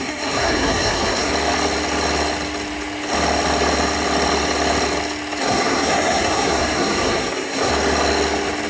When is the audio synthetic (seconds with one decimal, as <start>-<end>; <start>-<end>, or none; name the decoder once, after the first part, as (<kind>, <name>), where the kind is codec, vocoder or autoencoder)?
0.0-1.3 (codec, SNAC); 5.4-7.7